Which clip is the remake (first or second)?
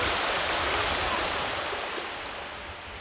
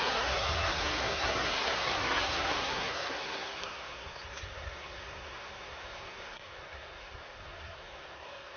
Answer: second